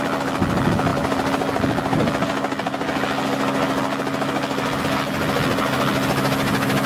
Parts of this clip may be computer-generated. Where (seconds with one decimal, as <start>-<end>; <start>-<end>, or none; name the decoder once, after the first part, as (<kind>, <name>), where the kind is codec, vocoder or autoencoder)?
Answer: none